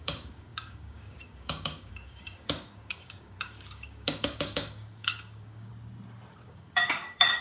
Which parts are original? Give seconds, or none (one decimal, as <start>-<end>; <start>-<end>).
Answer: 5.7-6.4